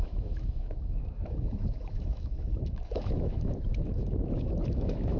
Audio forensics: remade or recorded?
remade